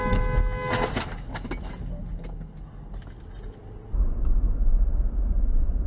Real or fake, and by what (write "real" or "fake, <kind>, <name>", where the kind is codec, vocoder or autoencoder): real